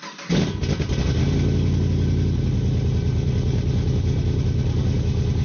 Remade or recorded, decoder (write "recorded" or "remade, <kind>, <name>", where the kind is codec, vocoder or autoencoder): recorded